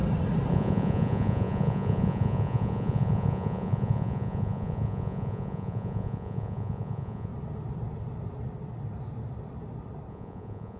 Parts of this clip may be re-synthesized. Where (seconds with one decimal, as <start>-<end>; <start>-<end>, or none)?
0.5-7.3; 10.1-10.8